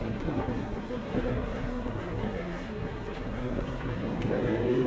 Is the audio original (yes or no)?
no